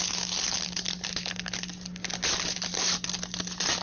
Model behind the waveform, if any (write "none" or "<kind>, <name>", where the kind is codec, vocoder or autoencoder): none